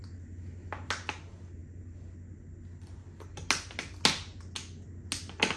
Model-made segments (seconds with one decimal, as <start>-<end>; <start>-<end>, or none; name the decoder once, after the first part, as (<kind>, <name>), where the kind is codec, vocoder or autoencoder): none